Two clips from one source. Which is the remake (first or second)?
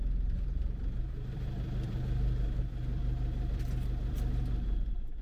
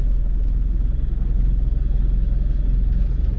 first